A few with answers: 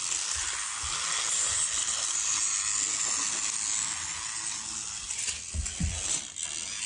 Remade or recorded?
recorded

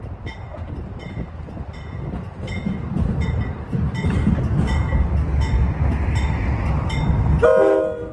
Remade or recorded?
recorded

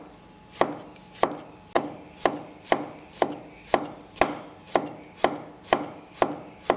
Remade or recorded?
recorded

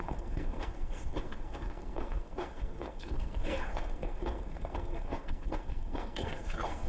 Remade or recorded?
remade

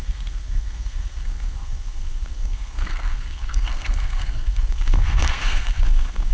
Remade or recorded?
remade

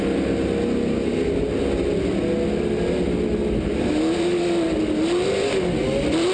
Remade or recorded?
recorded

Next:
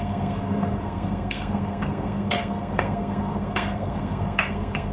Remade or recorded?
remade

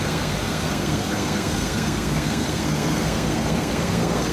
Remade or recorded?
remade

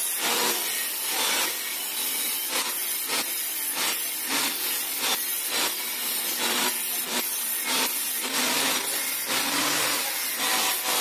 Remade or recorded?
recorded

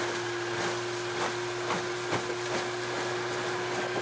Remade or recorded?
recorded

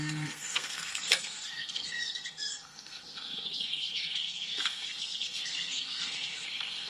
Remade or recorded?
remade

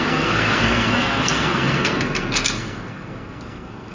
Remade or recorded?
remade